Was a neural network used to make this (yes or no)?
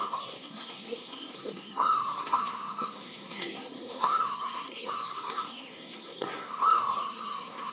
yes